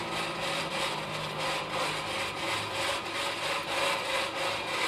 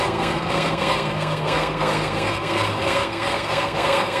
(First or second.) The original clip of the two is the first